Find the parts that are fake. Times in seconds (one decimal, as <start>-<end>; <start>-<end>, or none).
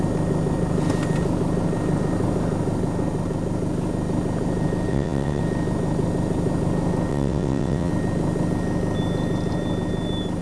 4.9-5.4; 7.1-7.9